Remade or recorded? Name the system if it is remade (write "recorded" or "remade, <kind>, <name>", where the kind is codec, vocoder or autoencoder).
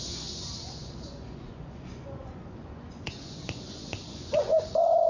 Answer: remade, vocoder, Vocos